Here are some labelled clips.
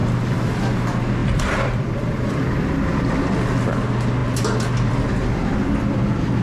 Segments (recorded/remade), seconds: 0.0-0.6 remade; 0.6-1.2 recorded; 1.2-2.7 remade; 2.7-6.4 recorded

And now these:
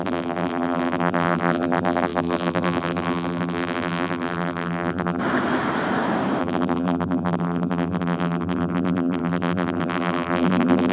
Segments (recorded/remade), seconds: 0.0-5.2 remade; 5.2-6.4 recorded; 6.4-10.9 remade

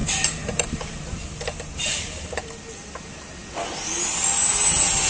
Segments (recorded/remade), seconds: 0.0-2.4 remade; 2.4-5.1 recorded

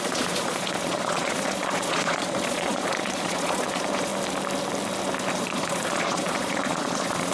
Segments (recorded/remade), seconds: 0.0-4.1 remade; 4.1-5.3 recorded; 5.3-7.3 remade

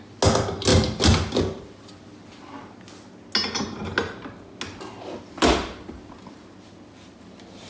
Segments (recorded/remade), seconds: 0.0-7.7 recorded

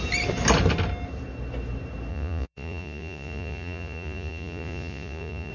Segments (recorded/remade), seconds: 0.0-2.1 recorded; 2.1-5.5 remade